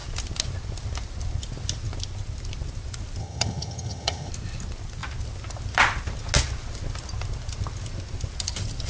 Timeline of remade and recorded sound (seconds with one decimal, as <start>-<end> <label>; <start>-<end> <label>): 0.0-3.2 recorded; 3.2-4.3 remade; 4.3-8.9 recorded